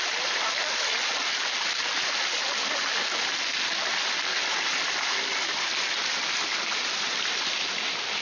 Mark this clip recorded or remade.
recorded